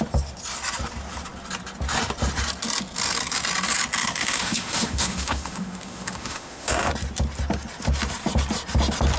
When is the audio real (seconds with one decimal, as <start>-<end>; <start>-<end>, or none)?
0.0-4.0; 6.9-9.2